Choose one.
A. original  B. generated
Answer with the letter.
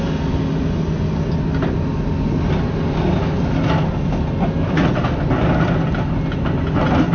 A